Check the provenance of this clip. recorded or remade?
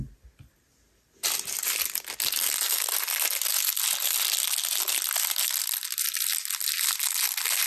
recorded